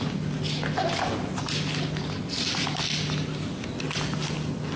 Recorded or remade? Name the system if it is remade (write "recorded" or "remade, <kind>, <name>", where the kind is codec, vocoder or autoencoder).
recorded